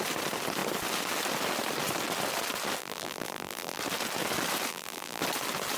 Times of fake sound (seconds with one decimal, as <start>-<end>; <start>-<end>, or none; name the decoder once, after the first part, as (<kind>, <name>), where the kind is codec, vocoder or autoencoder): 2.8-3.8 (vocoder, BigVGAN v2); 4.7-5.2